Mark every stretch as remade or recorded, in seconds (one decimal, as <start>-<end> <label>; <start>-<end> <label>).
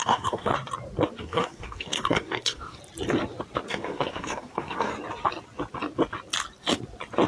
0.0-0.5 remade; 0.5-1.2 recorded; 1.2-2.8 remade; 2.8-3.7 recorded; 3.7-4.9 remade; 4.9-7.3 recorded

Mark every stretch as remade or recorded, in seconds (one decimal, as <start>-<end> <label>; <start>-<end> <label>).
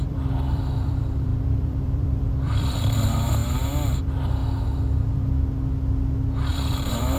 0.0-3.4 remade; 3.4-4.0 recorded; 4.0-4.4 remade; 4.4-6.5 recorded; 6.5-7.2 remade